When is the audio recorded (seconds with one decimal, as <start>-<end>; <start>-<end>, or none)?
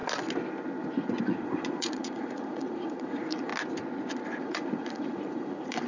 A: 0.0-1.2; 3.5-4.4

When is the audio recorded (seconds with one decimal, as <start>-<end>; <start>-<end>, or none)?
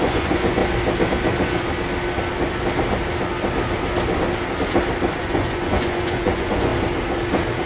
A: 0.6-5.2; 6.7-7.7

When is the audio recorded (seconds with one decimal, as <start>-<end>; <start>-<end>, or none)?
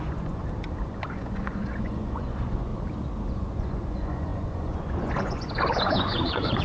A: 0.4-0.9; 2.7-3.3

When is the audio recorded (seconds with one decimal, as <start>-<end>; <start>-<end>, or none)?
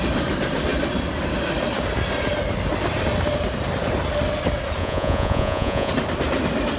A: 0.0-4.8; 5.9-6.8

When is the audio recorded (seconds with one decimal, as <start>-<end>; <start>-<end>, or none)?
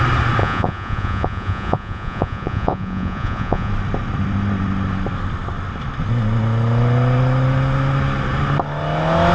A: 0.0-0.4; 3.7-9.3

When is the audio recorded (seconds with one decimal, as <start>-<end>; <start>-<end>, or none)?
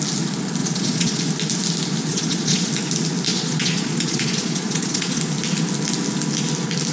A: 0.0-0.6; 1.2-2.1; 2.7-3.3; 5.2-6.9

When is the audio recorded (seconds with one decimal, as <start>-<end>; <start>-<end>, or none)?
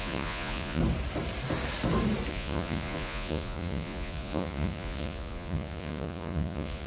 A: 0.8-2.3